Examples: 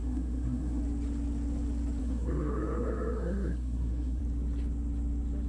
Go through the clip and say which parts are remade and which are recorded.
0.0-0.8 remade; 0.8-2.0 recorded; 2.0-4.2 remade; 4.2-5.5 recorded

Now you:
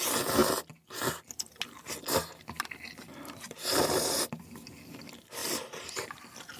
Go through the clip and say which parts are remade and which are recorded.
0.0-6.6 recorded

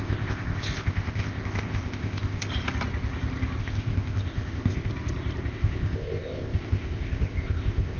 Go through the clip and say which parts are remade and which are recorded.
0.0-2.5 remade; 2.5-3.6 recorded; 3.6-4.9 remade; 4.9-5.5 recorded; 5.5-8.0 remade

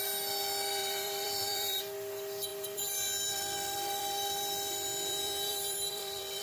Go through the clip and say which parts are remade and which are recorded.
0.0-0.8 recorded; 0.8-1.8 remade; 1.8-2.5 recorded; 2.5-6.4 remade

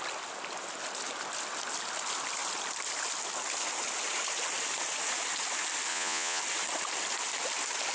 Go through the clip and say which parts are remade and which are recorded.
0.0-5.9 recorded; 5.9-6.4 remade; 6.4-7.9 recorded

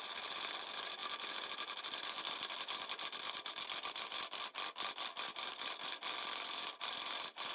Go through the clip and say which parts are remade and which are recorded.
0.0-7.5 recorded

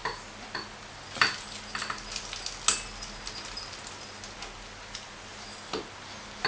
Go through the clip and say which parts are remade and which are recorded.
0.0-6.5 recorded

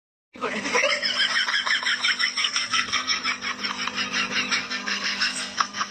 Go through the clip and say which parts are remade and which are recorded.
0.0-2.4 recorded; 2.4-3.2 remade; 3.2-4.6 recorded; 4.6-5.9 remade